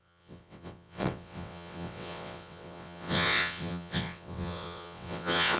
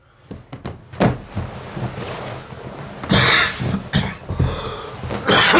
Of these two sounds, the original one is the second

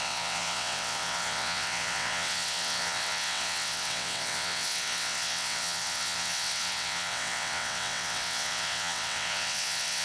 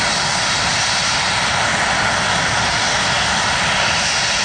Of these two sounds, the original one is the second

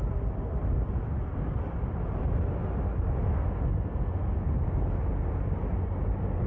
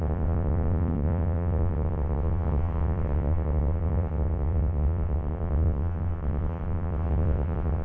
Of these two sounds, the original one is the first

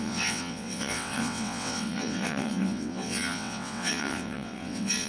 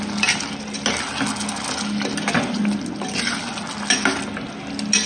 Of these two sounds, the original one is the second